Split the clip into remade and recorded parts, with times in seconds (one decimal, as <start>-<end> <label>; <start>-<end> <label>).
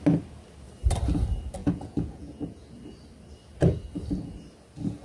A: 0.0-1.6 recorded; 1.6-2.6 remade; 2.6-5.0 recorded